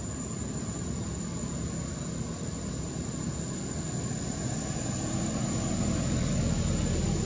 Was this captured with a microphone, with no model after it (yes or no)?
yes